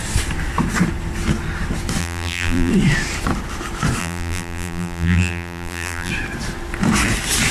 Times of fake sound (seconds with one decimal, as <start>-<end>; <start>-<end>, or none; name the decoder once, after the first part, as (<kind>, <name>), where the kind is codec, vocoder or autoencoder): 2.0-2.7 (vocoder, BigVGAN v2); 4.0-6.1